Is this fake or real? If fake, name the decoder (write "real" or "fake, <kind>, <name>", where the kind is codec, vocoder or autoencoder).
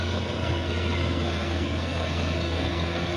fake, codec, SNAC